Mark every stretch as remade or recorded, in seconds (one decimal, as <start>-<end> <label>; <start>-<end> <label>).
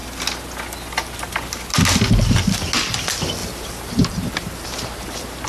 0.0-3.4 recorded; 3.4-5.5 remade